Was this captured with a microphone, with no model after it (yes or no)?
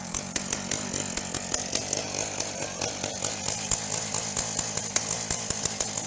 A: yes